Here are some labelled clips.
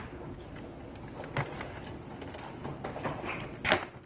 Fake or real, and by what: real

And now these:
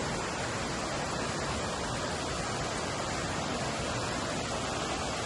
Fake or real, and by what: real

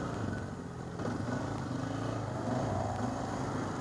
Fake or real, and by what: real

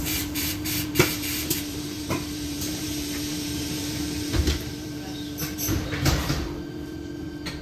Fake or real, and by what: fake, vocoder, BigVGAN v2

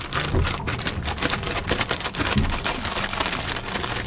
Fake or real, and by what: real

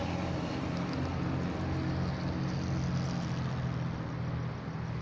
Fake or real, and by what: real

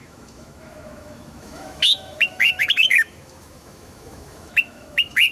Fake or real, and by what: fake, autoencoder, DAC-VAE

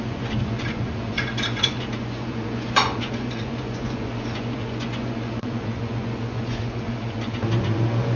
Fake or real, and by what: fake, vocoder, Vocos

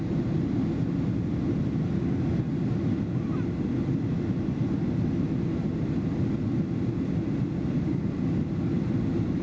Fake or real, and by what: real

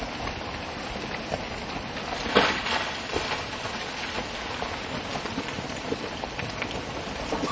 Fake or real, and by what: real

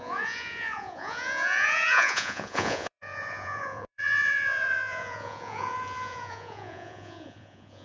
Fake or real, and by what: fake, vocoder, Vocos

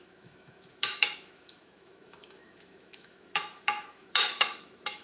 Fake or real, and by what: fake, autoencoder, DAC-VAE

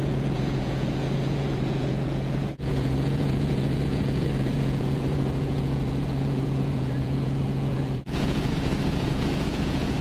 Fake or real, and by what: fake, vocoder, Vocos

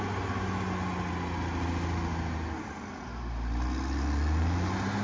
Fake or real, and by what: real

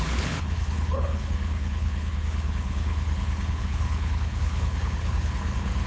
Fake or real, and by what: fake, codec, HILCodec